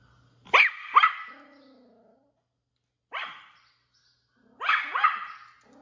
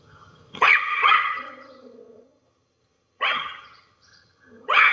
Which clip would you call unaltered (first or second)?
first